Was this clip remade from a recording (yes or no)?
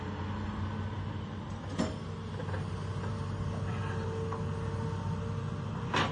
no